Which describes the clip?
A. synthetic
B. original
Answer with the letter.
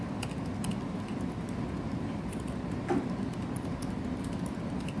B